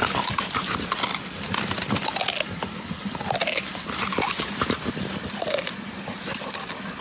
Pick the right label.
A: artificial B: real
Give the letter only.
B